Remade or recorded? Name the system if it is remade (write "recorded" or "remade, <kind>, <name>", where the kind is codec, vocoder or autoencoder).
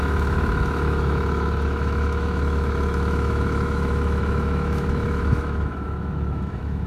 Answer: remade, autoencoder, DAC-VAE